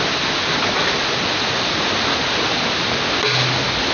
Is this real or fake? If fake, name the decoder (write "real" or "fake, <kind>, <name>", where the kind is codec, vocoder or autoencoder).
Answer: real